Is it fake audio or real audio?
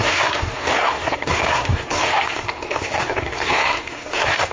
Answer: fake